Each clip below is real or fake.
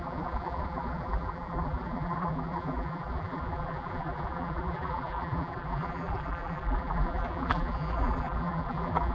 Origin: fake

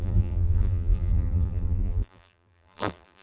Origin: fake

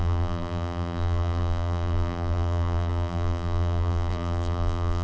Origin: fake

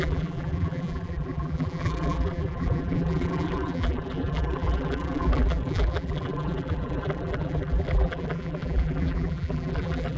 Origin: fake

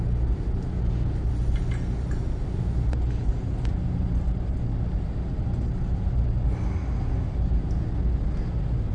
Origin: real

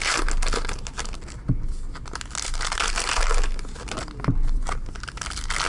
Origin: real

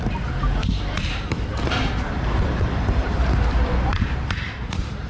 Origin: fake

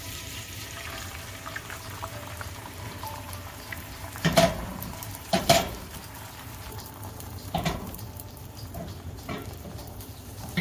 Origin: fake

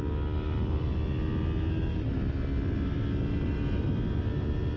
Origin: real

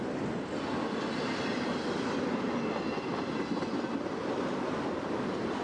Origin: real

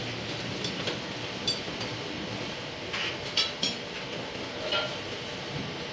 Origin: real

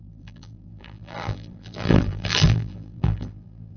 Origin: fake